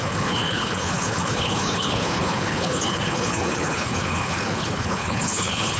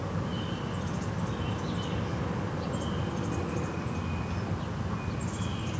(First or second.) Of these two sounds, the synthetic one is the first